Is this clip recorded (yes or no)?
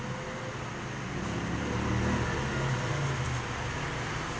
yes